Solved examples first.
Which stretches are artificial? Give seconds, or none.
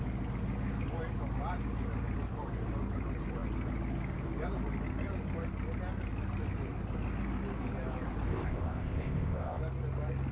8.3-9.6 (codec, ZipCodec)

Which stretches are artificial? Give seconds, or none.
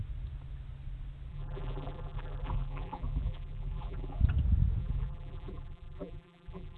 1.3-4.2 (vocoder, BigVGAN v2); 4.8-6.8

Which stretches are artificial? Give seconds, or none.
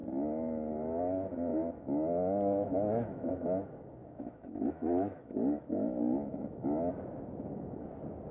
1.5-3.3 (autoencoder, DAC-VAE); 4.0-6.9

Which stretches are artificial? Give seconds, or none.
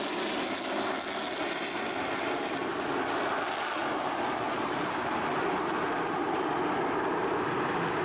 3.8-6.6 (vocoder, BigVGAN v2)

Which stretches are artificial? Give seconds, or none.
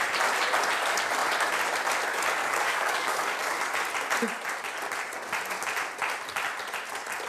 2.4-3.7 (codec, DAC)